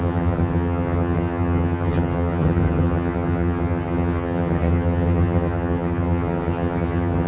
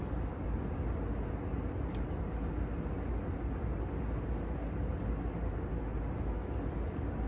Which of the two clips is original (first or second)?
second